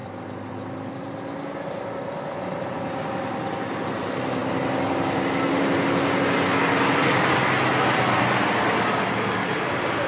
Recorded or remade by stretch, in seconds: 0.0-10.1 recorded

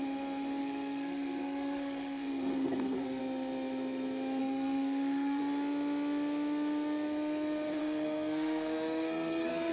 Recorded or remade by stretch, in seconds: 0.0-0.6 recorded; 0.6-3.2 remade; 3.2-4.4 recorded; 4.4-5.4 remade; 5.4-7.8 recorded; 7.8-9.7 remade

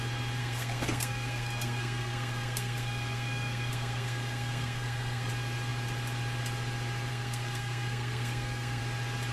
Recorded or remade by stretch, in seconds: 0.0-0.4 recorded; 0.4-5.3 remade; 5.3-7.1 recorded; 7.1-8.8 remade; 8.8-9.3 recorded

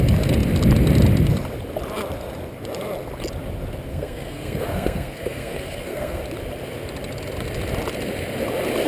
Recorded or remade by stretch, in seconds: 0.0-3.9 recorded; 3.9-6.2 remade; 6.2-8.9 recorded

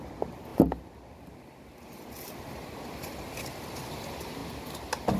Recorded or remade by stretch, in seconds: 0.0-5.2 recorded

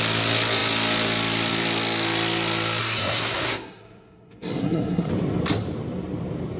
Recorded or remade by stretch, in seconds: 0.0-2.8 recorded; 2.8-5.1 remade; 5.1-6.6 recorded